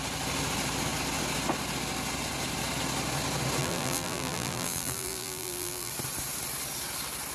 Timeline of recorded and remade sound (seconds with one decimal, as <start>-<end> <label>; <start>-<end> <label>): 0.0-3.6 recorded; 3.6-5.9 remade; 5.9-7.3 recorded